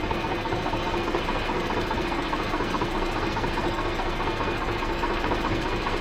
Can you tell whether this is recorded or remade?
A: remade